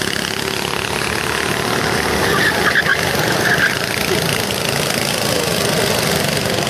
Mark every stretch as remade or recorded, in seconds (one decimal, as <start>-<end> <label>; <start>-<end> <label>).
0.0-2.9 recorded; 2.9-5.1 remade; 5.1-6.7 recorded